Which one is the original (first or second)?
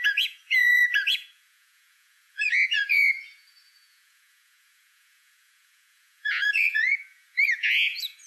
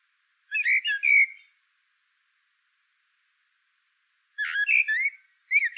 second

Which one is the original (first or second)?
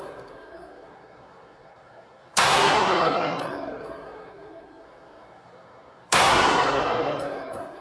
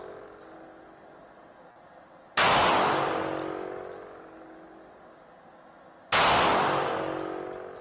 second